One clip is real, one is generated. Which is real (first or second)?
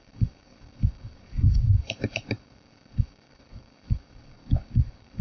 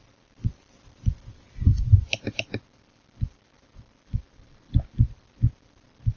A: second